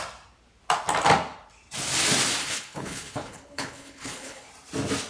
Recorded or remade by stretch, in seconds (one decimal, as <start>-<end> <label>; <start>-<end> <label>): 0.0-2.4 recorded; 2.4-4.5 remade; 4.5-5.1 recorded